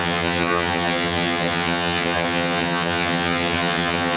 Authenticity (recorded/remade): remade